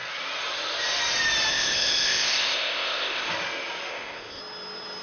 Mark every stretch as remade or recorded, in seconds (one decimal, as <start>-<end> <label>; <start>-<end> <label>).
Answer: 0.0-1.5 recorded; 1.5-3.3 remade; 3.3-3.9 recorded; 3.9-4.4 remade; 4.4-5.0 recorded